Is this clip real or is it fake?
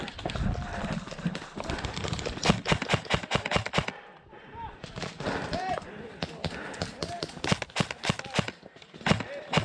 real